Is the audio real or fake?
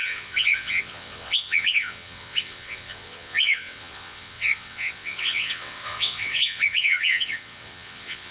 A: fake